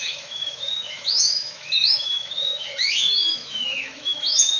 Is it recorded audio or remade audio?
remade